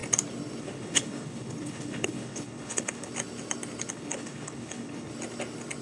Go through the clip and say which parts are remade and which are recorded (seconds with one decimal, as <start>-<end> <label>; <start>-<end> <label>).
0.0-0.6 recorded; 0.6-3.1 remade; 3.1-3.9 recorded; 3.9-5.1 remade; 5.1-5.8 recorded